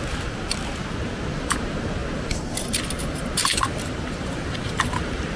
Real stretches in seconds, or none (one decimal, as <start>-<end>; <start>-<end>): 0.0-3.4